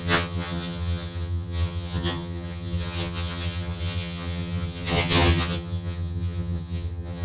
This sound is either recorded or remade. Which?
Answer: remade